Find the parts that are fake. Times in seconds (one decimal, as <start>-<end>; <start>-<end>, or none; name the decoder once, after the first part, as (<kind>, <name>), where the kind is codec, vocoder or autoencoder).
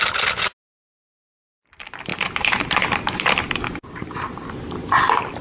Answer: none